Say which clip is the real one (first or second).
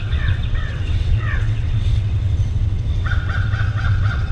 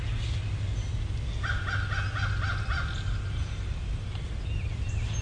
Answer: second